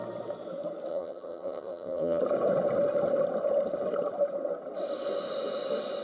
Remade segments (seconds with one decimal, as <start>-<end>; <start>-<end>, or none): 0.9-2.2